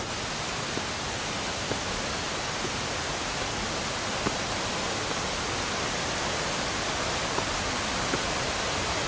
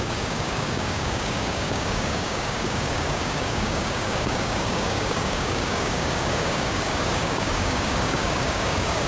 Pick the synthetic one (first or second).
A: second